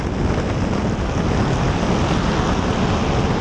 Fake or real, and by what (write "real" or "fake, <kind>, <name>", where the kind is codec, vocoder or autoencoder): real